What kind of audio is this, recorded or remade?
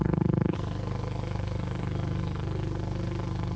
remade